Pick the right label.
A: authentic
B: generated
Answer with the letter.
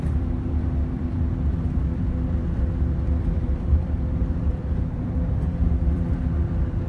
B